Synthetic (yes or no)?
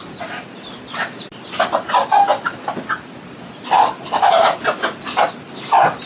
no